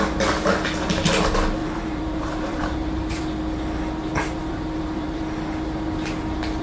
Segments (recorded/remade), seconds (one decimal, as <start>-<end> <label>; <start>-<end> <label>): 0.0-1.6 recorded; 1.6-3.2 remade; 3.2-4.4 recorded; 4.4-5.2 remade; 5.2-6.6 recorded